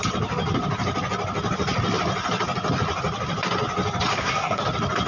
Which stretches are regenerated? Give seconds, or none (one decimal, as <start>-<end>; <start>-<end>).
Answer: 4.1-4.6